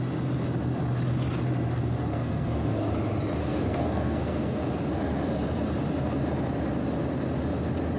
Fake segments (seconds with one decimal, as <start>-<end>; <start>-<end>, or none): 2.1-2.9; 3.4-4.6